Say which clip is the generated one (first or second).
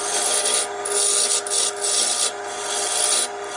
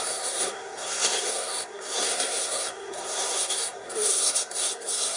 second